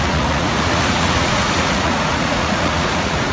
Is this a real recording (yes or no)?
no